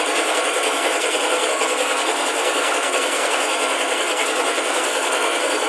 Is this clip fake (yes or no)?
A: yes